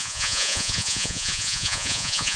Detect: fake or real fake